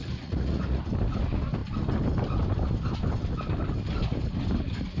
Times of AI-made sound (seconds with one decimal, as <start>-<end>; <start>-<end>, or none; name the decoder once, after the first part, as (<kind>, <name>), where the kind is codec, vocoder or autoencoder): 0.0-0.8 (vocoder, Vocos)